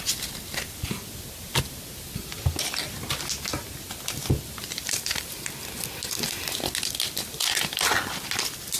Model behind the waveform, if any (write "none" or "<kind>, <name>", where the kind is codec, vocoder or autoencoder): none